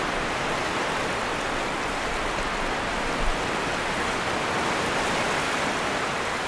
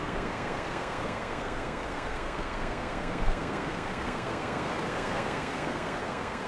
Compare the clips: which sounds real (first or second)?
first